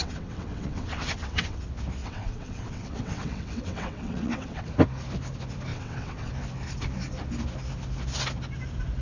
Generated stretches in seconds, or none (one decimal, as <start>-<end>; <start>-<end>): 0.0-1.6; 2.0-4.7; 5.7-6.3